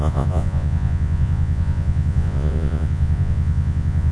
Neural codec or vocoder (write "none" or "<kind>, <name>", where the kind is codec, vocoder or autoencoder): vocoder, Vocos